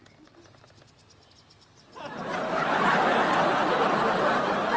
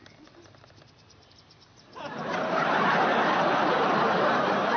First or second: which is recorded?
first